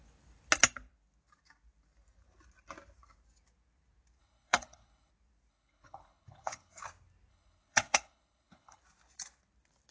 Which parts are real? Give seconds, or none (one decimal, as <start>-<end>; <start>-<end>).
0.0-4.2; 5.1-5.5; 6.8-7.3; 8.8-9.9